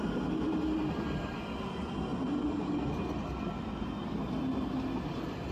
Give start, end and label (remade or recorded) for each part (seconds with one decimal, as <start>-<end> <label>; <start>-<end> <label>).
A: 0.0-5.5 recorded